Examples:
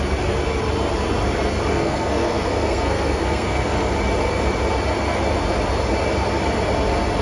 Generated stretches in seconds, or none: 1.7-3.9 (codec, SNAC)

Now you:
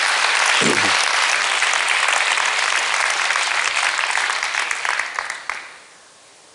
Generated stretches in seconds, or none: none

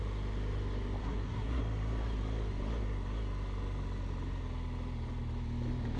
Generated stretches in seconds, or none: 1.0-1.6 (codec, SNAC)

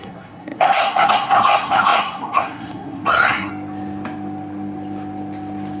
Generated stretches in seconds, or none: 0.0-3.5 (codec, SNAC)

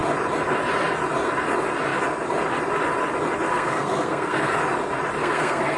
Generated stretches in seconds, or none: 3.5-4.6 (codec, SNAC); 5.2-5.8

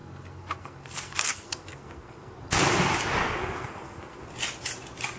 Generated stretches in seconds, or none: 0.0-2.4 (codec, SNAC); 3.2-4.2